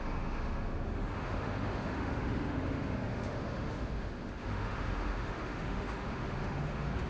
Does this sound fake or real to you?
fake